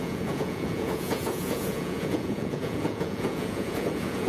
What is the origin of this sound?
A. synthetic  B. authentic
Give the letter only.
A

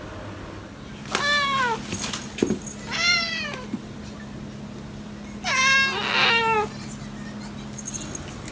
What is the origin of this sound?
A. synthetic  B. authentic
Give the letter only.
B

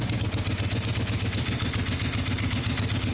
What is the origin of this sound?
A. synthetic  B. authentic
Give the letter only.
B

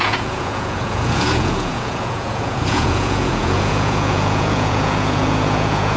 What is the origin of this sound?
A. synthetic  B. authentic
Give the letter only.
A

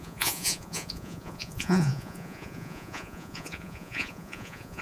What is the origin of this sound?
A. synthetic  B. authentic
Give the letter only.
A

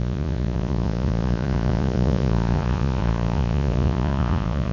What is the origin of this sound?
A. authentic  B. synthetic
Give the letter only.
B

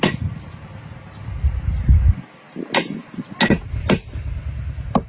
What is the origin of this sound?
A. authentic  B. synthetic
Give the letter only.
A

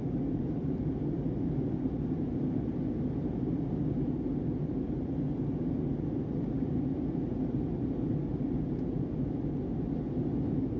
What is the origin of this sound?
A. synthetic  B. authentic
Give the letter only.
B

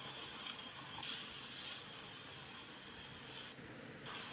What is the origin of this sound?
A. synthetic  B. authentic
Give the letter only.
B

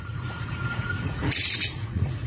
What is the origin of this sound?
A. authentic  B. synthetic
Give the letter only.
B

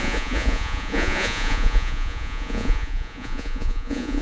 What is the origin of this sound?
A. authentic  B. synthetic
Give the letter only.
B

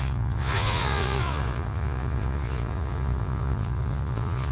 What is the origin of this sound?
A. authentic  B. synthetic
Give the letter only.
B